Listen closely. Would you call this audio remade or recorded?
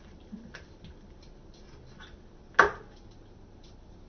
recorded